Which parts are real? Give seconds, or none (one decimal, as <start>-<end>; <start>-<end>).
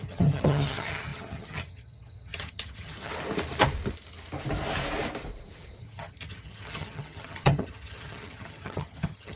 3.1-5.8